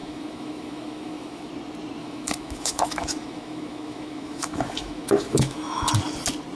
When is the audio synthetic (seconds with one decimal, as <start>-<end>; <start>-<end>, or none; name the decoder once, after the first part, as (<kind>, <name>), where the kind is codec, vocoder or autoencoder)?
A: 0.0-1.5 (autoencoder, DAC-VAE); 2.0-5.9